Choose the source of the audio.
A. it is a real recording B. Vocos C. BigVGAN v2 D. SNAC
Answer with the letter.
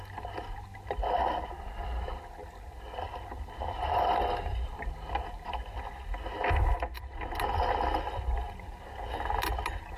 A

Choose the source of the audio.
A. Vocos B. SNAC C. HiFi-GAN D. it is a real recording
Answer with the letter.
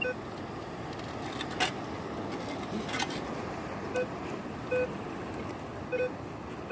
D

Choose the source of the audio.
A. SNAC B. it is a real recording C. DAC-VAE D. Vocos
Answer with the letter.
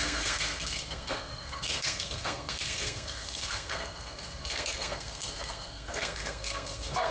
A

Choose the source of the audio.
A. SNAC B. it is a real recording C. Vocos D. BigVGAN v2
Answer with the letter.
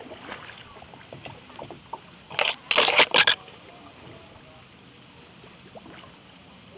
B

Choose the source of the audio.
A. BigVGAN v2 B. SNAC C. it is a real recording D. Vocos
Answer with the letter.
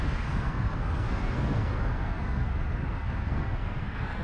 B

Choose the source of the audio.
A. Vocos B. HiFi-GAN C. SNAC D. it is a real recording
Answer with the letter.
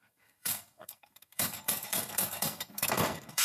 C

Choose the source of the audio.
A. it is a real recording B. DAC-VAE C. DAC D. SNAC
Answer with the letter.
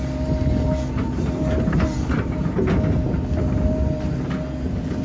A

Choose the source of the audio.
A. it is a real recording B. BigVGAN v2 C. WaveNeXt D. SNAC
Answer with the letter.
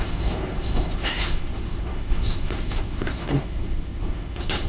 D